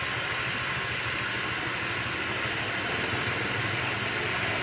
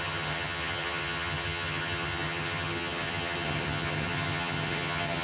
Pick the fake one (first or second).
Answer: second